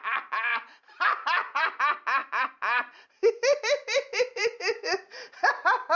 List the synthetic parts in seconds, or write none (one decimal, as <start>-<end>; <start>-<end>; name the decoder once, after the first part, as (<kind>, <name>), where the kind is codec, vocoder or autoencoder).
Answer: 0.5-1.8 (vocoder, BigVGAN v2); 2.2-5.5